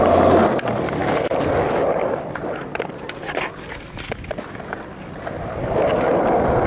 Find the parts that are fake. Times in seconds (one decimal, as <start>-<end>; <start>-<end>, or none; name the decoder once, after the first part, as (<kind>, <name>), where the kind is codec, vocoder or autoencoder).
none

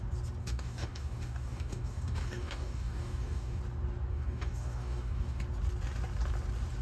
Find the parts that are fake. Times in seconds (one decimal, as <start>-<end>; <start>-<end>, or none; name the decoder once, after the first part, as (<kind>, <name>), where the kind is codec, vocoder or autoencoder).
0.4-3.6 (codec, DAC); 4.1-5.4

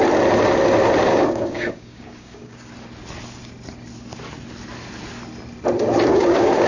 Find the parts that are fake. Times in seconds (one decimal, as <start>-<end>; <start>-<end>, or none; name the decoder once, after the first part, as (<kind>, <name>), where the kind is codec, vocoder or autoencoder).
1.1-2.7 (codec, DAC); 6.1-6.7

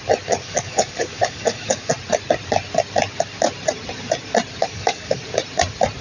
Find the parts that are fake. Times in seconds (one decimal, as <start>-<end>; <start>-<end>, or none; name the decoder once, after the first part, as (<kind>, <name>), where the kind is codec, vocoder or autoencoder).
0.4-1.9 (codec, DAC); 4.6-5.2

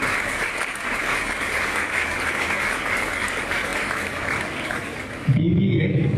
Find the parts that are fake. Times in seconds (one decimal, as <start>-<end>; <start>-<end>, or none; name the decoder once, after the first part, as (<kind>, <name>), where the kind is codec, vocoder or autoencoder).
0.0-6.2 (codec, DAC)

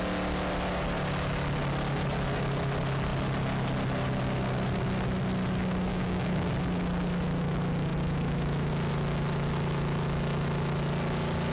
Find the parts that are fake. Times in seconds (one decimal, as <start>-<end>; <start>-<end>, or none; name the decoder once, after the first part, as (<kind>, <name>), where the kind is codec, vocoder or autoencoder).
5.9-6.5 (codec, DAC)

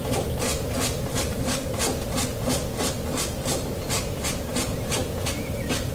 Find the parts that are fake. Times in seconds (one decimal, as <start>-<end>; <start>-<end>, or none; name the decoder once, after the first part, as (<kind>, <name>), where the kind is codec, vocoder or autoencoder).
1.1-1.7 (codec, DAC)